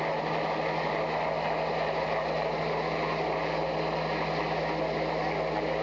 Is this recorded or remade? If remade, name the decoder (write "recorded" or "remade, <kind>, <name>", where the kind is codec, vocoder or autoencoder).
recorded